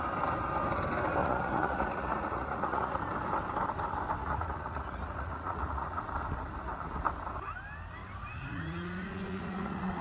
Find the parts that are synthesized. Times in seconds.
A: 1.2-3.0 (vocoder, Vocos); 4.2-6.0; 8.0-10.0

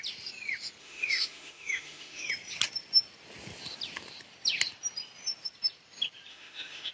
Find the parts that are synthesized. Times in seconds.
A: 0.8-2.3 (autoencoder, DAC-VAE); 6.3-6.9